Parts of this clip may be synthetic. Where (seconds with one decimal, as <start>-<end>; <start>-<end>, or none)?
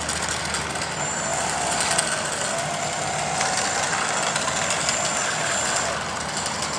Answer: none